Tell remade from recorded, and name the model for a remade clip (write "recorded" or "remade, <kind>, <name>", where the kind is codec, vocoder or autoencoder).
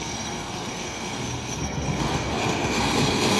remade, codec, SNAC